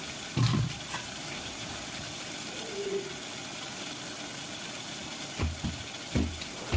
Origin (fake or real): real